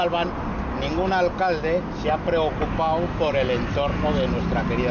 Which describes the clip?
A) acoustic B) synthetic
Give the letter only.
A